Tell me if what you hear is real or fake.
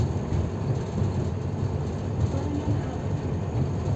real